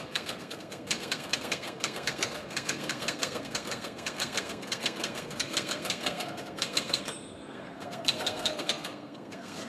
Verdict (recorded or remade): remade